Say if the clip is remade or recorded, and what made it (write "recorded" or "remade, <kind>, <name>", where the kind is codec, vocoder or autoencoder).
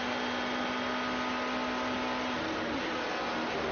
recorded